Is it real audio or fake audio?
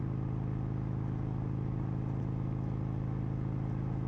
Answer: real